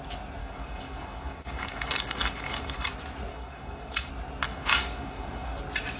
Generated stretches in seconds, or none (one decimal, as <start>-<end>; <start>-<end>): 0.4-2.9; 3.3-4.1; 4.5-5.6

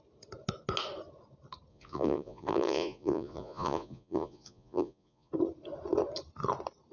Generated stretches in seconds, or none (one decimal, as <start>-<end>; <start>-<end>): 1.7-5.3